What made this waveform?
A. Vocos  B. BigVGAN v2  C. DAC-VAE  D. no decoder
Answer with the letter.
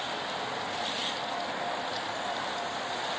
D